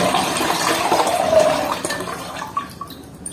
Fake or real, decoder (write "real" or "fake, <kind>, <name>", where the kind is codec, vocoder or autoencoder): fake, vocoder, BigVGAN v2